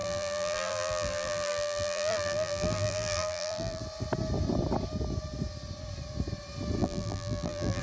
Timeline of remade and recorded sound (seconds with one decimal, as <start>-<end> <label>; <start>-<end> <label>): 0.0-3.8 remade; 3.8-6.8 recorded; 6.8-7.8 remade